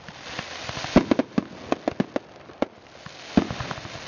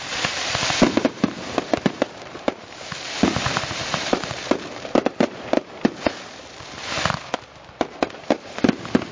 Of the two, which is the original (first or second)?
first